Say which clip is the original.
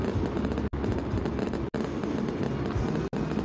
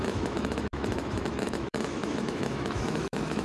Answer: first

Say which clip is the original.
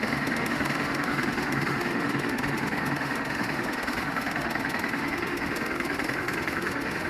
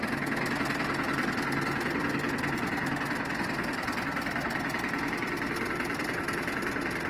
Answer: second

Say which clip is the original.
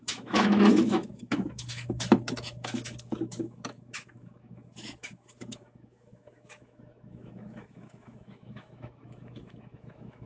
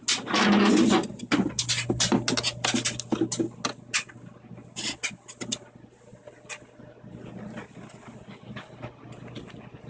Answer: second